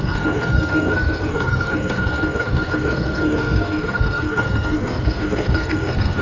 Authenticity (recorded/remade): remade